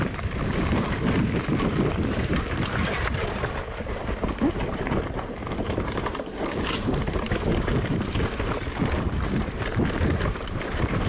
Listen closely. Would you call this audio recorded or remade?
remade